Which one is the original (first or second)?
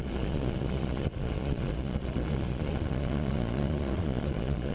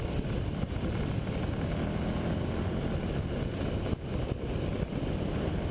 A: second